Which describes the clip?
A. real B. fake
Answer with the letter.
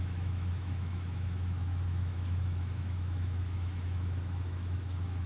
B